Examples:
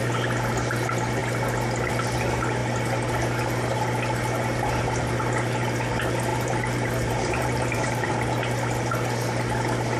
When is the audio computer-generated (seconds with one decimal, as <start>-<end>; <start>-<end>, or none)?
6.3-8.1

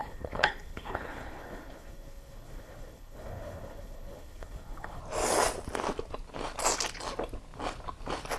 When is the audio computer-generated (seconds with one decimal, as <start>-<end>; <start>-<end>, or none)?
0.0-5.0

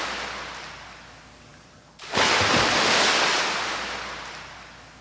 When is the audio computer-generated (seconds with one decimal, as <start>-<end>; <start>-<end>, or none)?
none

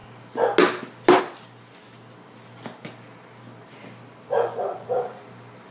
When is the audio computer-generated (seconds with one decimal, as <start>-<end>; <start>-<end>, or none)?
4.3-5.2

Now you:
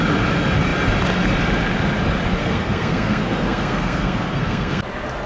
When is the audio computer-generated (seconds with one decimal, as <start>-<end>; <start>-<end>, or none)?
2.4-4.8